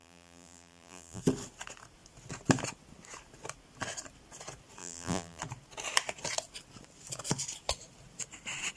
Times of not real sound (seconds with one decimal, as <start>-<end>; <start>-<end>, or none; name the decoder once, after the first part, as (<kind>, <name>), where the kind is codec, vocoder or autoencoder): 0.0-1.2 (vocoder, BigVGAN v2); 4.8-5.4